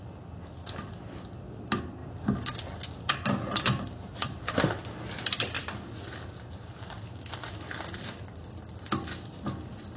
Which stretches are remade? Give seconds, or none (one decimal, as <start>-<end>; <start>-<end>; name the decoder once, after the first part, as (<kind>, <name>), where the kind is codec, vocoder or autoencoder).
none